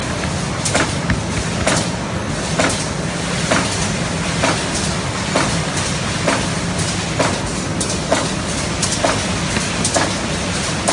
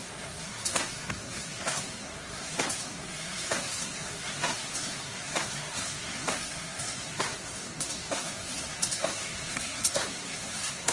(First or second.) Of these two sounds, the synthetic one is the second